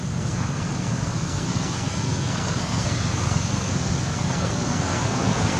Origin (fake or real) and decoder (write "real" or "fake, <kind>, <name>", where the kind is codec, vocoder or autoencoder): fake, codec, SNAC